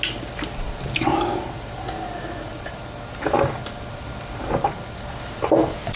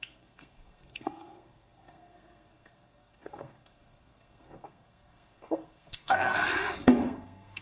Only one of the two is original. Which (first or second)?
first